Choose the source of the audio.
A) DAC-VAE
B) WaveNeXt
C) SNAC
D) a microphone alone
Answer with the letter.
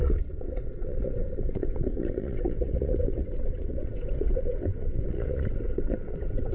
B